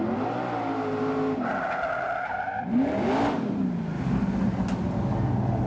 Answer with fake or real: real